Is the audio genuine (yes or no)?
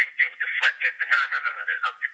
no